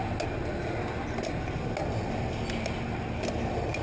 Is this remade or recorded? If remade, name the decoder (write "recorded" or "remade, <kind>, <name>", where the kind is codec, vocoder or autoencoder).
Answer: recorded